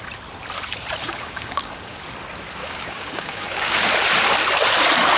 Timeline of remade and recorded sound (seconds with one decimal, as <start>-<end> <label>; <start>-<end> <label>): 0.0-1.0 recorded; 1.0-2.0 remade; 2.0-2.6 recorded; 2.6-3.9 remade; 3.9-5.2 recorded